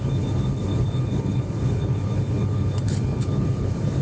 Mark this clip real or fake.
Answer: fake